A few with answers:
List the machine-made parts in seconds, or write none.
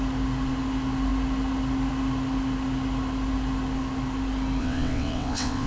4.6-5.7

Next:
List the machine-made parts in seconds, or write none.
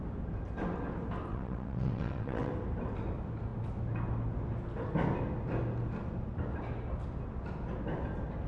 1.3-2.5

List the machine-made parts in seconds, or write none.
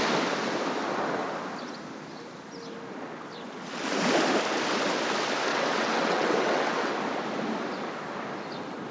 5.5-6.9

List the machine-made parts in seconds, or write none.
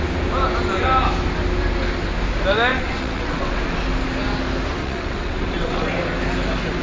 2.7-3.6; 4.8-5.9